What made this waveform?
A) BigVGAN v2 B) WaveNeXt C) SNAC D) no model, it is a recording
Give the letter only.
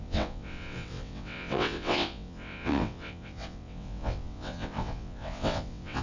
B